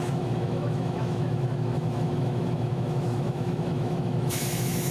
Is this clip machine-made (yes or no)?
yes